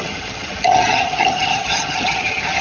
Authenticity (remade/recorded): remade